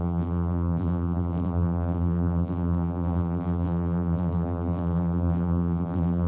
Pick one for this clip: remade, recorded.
remade